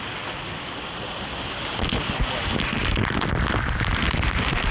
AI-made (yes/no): no